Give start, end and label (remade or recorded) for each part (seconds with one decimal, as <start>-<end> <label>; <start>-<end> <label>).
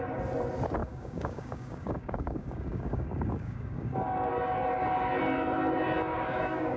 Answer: 0.0-0.8 recorded; 0.8-4.3 remade; 4.3-6.1 recorded; 6.1-6.8 remade